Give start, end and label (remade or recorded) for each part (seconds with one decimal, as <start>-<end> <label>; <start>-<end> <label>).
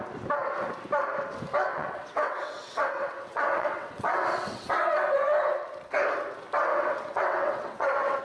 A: 0.0-1.7 recorded; 1.7-5.2 remade; 5.2-6.7 recorded; 6.7-8.2 remade